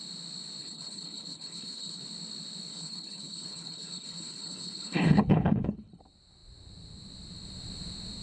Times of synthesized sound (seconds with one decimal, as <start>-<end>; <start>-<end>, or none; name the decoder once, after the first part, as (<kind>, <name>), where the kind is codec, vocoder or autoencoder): 0.6-2.0 (codec, HILCodec); 2.7-6.0

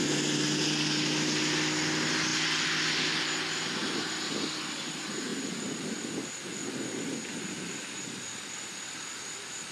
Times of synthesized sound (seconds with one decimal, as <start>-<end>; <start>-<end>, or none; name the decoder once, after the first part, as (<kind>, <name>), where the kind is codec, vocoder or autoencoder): none